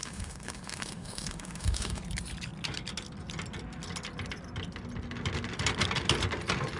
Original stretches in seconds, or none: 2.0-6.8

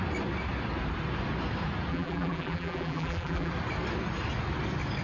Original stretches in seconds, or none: 0.0-1.9; 3.5-5.0

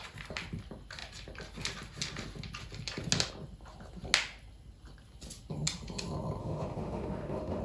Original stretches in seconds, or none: 0.0-6.4

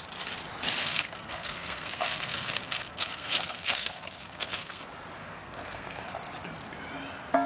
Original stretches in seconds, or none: 0.0-0.8; 4.8-5.2; 6.0-7.5

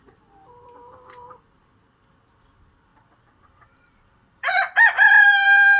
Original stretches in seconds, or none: 0.0-2.9

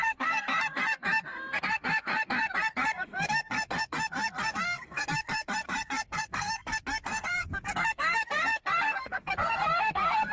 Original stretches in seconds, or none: none